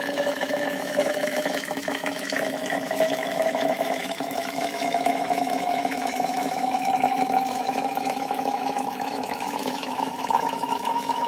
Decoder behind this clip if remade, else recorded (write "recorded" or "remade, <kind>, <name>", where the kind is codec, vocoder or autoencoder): remade, autoencoder, DAC-VAE